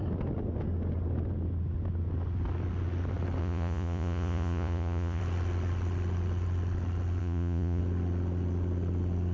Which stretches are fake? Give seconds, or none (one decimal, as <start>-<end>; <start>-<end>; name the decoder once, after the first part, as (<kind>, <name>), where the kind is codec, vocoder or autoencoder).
3.4-5.2 (vocoder, Vocos); 7.2-7.8

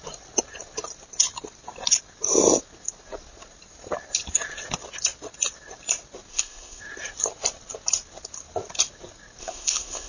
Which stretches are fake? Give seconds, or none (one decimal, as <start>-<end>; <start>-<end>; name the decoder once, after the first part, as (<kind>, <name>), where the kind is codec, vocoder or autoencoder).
6.3-6.8 (codec, ZipCodec); 9.4-10.1

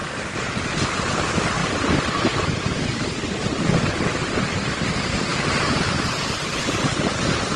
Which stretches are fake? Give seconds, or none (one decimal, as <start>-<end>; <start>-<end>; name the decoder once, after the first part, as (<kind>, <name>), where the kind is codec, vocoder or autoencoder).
1.6-2.4 (vocoder, BigVGAN v2); 5.3-5.9

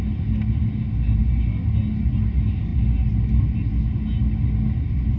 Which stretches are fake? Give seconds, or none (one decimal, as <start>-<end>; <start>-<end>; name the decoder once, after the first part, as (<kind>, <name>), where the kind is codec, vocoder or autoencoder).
none

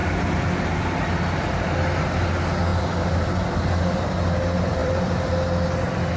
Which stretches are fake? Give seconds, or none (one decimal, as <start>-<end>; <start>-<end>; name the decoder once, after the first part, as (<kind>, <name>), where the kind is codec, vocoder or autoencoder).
2.7-3.7 (vocoder, BigVGAN v2); 4.8-5.3

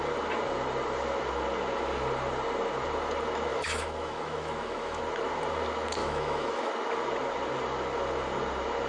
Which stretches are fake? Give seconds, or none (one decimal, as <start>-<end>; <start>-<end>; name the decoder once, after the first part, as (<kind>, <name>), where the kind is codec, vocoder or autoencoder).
3.5-5.0 (autoencoder, DAC-VAE); 6.0-6.7

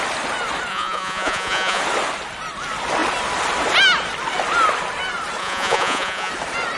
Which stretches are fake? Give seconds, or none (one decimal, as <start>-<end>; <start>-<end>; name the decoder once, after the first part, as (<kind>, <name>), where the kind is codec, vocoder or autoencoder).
0.7-1.8 (vocoder, Vocos); 5.4-6.3